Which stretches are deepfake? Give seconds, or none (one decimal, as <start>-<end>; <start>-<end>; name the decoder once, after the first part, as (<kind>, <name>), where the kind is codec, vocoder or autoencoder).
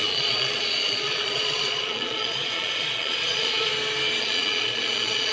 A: 0.0-3.7 (vocoder, Vocos); 4.2-5.3